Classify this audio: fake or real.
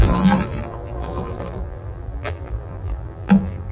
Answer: fake